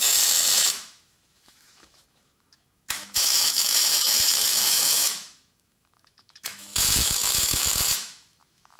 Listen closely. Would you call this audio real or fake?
fake